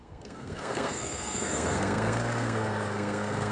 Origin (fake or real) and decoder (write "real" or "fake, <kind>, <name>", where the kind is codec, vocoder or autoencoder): fake, codec, SNAC